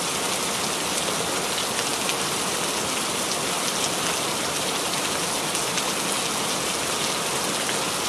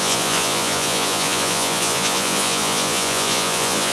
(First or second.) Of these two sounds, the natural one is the first